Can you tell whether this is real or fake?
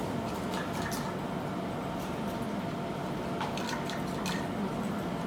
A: real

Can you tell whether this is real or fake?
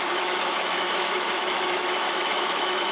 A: fake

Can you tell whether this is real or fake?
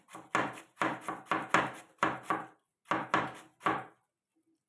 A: real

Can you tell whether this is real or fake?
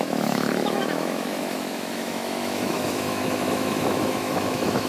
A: fake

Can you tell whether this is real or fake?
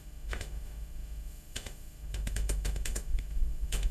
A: fake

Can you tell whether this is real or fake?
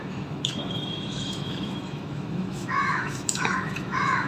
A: fake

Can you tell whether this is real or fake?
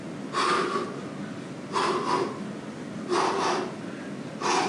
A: real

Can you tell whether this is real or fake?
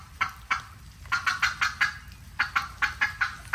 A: real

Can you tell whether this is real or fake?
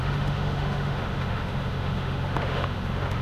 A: fake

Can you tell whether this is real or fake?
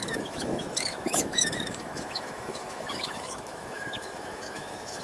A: fake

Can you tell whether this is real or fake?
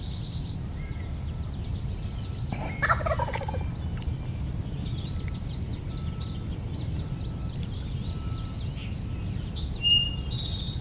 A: real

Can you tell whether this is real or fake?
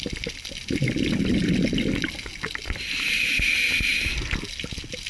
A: real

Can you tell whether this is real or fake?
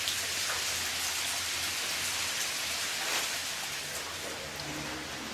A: real